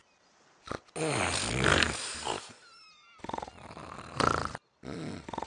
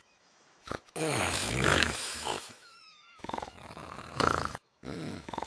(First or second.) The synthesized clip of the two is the second